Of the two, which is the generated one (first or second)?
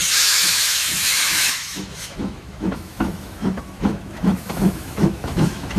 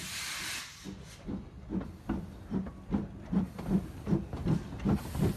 first